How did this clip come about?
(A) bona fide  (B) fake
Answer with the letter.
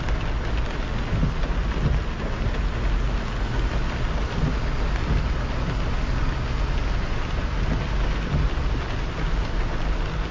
A